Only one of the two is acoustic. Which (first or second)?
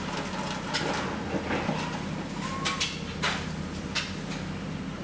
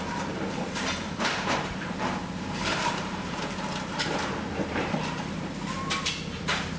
first